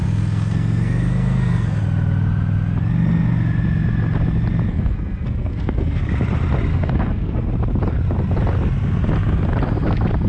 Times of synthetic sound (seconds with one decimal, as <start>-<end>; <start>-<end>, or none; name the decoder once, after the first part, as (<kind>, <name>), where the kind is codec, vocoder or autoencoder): 0.0-1.8 (codec, SNAC); 4.7-6.0; 6.7-7.5